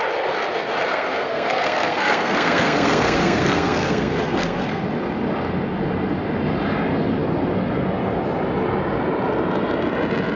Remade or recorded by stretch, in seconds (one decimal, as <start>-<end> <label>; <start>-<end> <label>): 0.0-0.9 recorded; 0.9-4.8 remade; 4.8-10.4 recorded